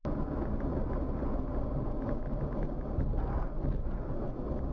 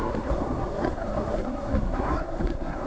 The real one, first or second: first